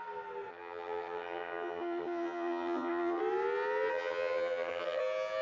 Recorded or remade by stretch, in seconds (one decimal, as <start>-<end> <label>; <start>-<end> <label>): 0.0-0.5 recorded; 0.5-3.2 remade; 3.2-3.9 recorded; 3.9-5.0 remade; 5.0-5.4 recorded